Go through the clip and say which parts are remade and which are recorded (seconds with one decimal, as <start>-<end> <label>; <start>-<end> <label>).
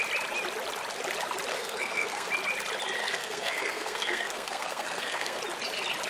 0.0-1.5 recorded; 1.5-2.3 remade; 2.3-3.0 recorded; 3.0-5.4 remade; 5.4-6.1 recorded